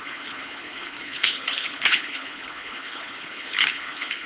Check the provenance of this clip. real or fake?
fake